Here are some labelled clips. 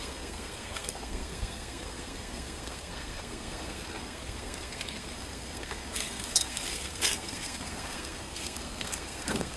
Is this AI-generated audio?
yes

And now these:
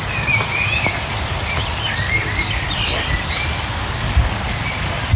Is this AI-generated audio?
no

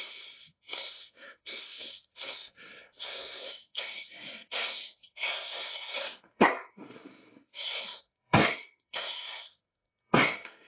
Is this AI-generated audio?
yes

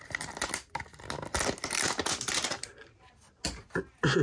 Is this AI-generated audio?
no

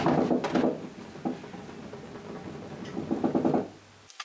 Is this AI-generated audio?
no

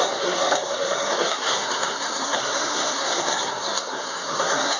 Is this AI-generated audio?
yes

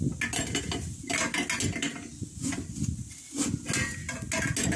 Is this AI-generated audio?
no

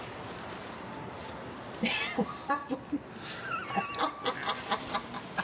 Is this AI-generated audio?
no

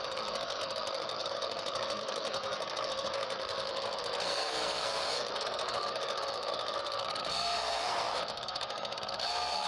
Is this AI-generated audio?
yes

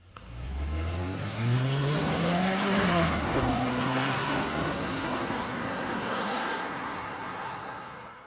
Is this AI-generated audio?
yes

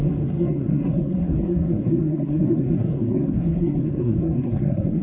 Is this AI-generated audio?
yes